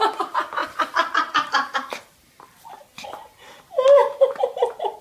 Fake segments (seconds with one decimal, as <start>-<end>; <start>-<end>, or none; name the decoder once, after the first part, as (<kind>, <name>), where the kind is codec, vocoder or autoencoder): none

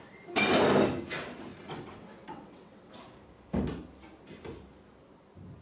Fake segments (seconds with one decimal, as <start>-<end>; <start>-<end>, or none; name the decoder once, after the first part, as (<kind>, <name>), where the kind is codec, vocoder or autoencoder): 1.5-2.9 (vocoder, WaveNeXt)

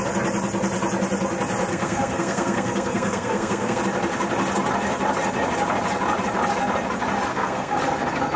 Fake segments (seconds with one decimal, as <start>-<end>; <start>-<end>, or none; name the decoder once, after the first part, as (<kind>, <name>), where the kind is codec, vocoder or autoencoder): 1.7-3.8 (codec, SNAC); 7.3-7.8

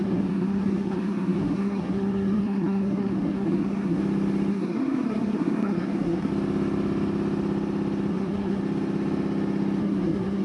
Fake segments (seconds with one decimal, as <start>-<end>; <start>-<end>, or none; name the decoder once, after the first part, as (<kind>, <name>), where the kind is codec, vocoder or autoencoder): 0.0-4.0 (codec, SNAC); 4.5-6.3; 8.1-8.6; 9.8-10.4